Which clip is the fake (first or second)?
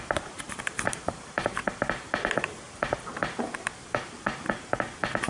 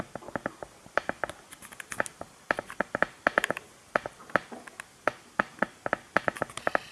first